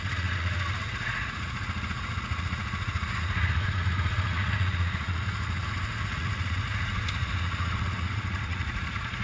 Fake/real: fake